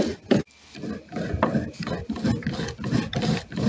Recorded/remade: recorded